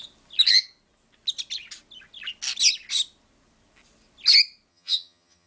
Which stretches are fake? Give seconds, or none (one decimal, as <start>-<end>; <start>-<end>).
4.7-5.5